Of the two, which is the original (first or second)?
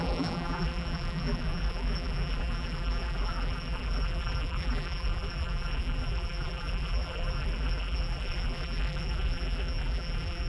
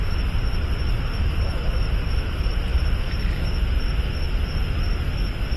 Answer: second